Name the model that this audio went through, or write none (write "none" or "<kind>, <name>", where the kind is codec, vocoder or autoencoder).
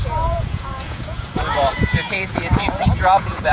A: vocoder, Vocos